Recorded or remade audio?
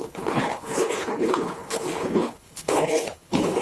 remade